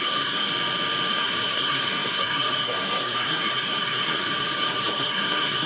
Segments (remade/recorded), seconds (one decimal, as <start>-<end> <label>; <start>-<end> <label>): 0.0-0.5 remade; 0.5-1.1 recorded; 1.1-5.7 remade